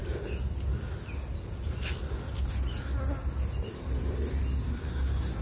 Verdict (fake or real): real